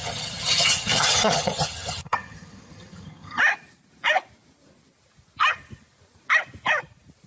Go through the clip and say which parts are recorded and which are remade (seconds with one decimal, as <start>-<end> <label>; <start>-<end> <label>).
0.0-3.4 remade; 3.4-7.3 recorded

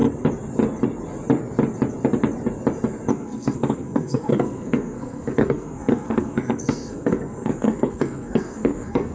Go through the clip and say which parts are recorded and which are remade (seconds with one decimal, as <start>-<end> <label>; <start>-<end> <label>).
0.0-3.1 recorded; 3.1-9.1 remade

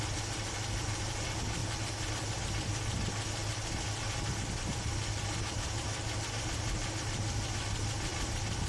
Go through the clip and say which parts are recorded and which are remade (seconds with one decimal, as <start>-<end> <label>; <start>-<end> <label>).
0.0-8.7 recorded

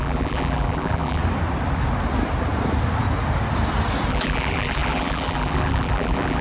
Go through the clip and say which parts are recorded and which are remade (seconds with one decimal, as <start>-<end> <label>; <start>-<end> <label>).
0.0-1.2 remade; 1.2-4.1 recorded; 4.1-6.4 remade